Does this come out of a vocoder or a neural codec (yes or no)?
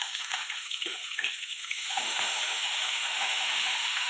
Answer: yes